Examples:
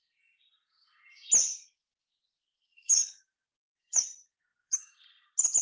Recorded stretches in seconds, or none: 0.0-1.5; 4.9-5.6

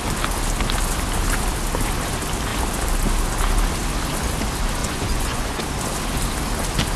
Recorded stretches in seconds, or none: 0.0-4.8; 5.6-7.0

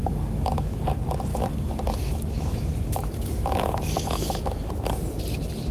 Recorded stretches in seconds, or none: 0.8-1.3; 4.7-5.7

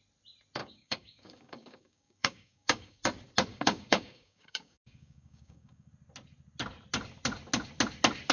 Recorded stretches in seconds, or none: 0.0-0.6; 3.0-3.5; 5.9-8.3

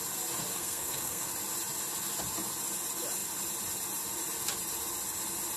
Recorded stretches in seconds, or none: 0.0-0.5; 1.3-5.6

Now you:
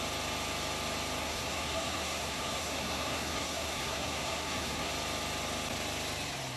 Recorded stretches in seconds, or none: 0.0-1.2; 4.9-6.6